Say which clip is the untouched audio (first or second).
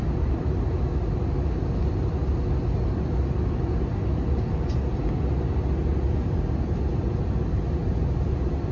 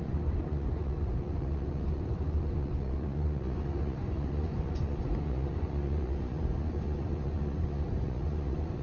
first